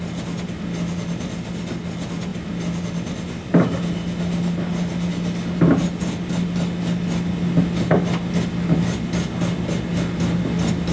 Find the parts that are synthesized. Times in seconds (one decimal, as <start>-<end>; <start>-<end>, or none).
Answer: none